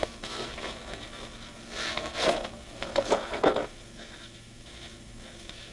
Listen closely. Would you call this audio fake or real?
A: fake